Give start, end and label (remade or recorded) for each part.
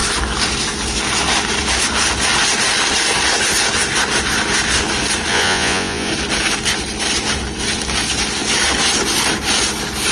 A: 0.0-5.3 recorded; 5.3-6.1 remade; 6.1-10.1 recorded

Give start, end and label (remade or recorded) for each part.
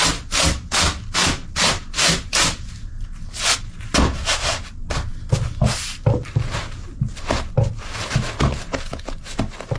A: 0.0-9.8 recorded